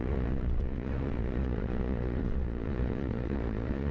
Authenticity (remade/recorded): remade